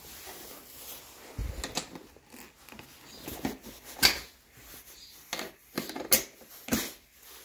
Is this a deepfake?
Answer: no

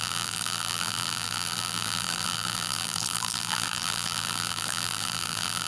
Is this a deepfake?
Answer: yes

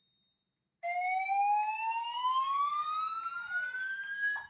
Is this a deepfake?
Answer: no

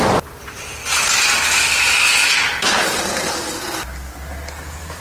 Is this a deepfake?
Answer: no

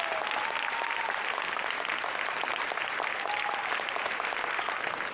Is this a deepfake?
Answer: no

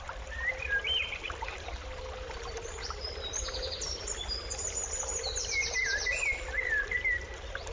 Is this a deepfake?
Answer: yes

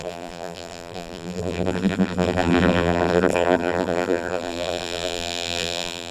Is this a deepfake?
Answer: yes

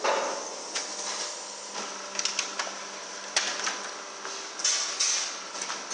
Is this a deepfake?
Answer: no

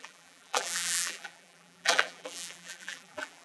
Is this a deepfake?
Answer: yes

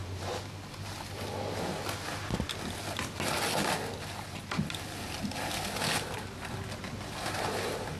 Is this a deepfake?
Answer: no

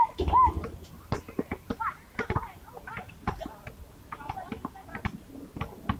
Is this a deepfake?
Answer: no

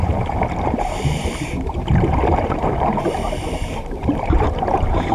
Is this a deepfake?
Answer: yes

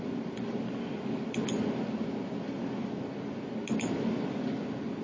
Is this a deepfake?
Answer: no